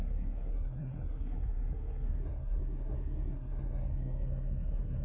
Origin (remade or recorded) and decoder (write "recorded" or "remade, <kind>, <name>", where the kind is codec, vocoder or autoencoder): remade, codec, SNAC